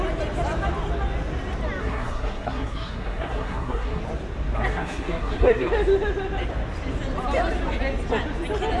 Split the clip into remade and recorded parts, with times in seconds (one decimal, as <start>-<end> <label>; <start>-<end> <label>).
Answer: 0.0-1.8 recorded; 1.8-4.0 remade; 4.0-4.7 recorded; 4.7-5.7 remade; 5.7-8.8 recorded